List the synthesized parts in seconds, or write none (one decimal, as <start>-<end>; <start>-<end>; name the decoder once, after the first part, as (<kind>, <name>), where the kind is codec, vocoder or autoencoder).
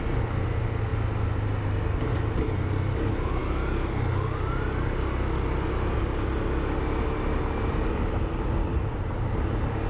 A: none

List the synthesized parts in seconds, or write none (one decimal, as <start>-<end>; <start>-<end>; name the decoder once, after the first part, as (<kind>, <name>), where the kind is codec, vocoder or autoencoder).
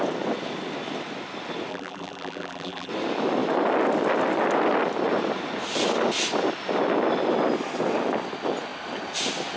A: 1.7-2.9 (vocoder, BigVGAN v2)